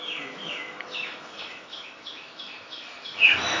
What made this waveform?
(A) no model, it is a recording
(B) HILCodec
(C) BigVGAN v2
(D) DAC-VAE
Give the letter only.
D